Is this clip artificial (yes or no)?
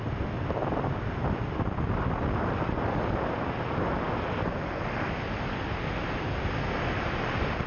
no